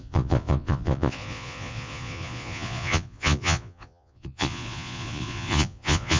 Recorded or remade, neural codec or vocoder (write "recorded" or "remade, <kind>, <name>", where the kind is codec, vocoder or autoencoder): remade, vocoder, Vocos